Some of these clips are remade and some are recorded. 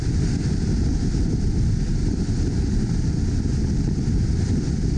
recorded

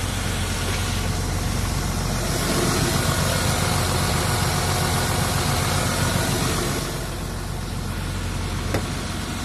recorded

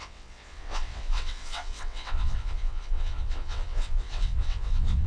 remade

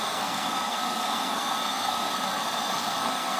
remade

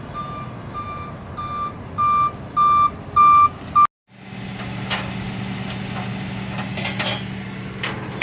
recorded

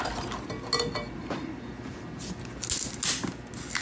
recorded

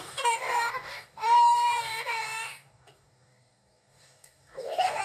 remade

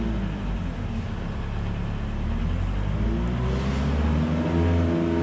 recorded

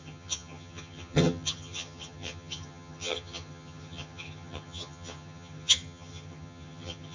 remade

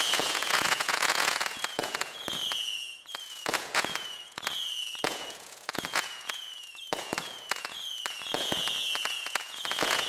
remade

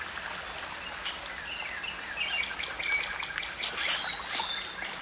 recorded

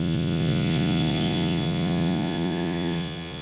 remade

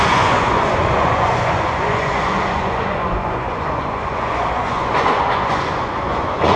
remade